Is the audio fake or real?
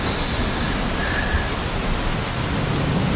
real